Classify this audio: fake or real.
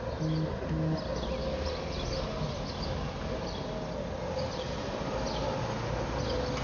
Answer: real